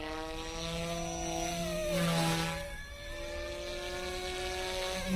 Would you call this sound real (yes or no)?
yes